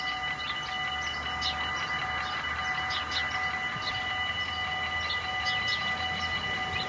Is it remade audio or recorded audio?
recorded